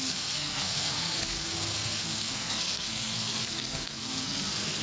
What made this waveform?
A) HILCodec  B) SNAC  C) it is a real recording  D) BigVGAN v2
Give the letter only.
B